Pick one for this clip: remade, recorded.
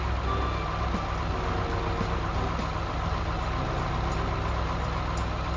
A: recorded